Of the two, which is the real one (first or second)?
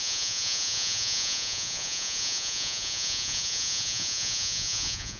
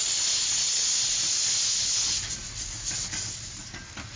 second